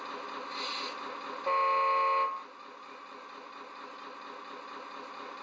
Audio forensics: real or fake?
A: real